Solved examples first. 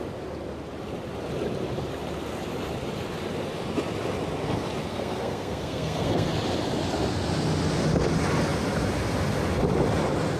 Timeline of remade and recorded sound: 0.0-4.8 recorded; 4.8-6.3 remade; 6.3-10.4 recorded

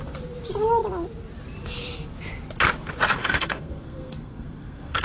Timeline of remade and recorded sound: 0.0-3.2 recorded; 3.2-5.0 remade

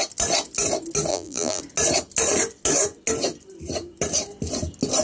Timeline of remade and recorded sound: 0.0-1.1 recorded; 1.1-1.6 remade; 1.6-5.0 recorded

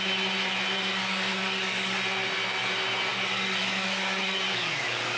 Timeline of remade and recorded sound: 0.0-0.9 recorded; 0.9-2.0 remade; 2.0-3.1 recorded; 3.1-5.2 remade